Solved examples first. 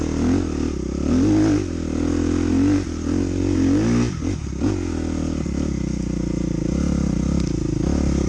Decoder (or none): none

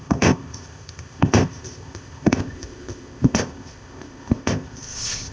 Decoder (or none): codec, ZipCodec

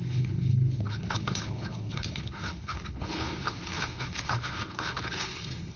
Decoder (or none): codec, HILCodec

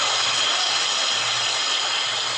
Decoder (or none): none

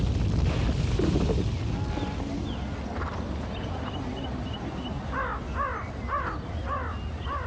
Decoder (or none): none